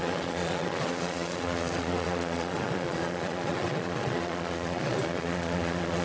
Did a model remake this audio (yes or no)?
yes